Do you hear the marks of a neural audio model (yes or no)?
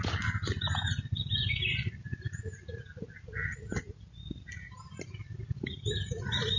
no